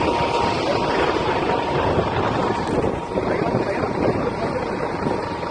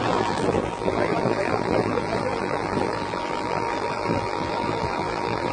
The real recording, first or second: first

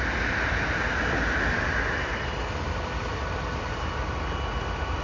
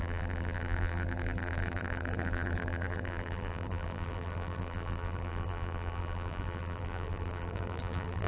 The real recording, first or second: first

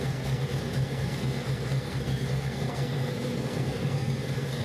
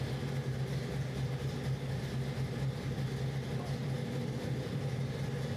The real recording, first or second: second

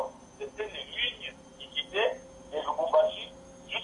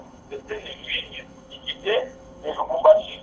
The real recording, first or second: first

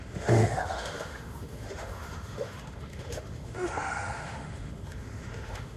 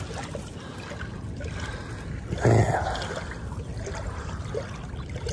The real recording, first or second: second